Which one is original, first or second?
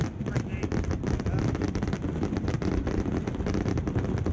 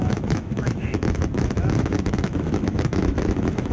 first